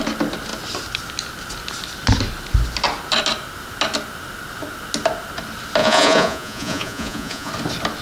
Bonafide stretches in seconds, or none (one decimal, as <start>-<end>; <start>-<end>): 0.0-5.8; 7.5-8.0

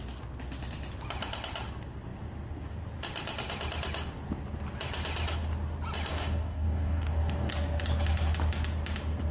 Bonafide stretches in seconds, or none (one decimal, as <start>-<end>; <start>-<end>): 0.0-6.1; 7.5-9.3

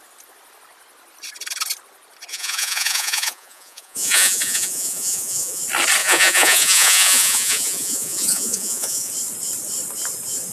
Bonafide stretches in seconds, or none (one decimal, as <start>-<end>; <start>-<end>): 0.0-2.3; 5.6-6.0; 9.1-10.5

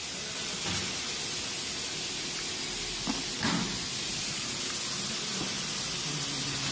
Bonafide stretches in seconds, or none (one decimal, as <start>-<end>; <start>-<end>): 0.0-6.7

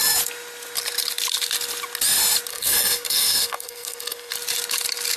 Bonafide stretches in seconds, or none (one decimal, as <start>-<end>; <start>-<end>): 0.0-2.5; 4.3-5.2

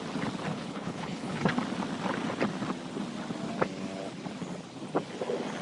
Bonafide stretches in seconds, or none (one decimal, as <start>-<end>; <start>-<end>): 0.0-0.5; 1.5-5.6

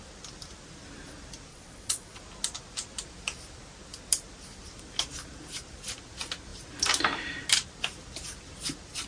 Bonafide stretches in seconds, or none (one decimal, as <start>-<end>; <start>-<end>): 0.0-1.5; 2.2-9.1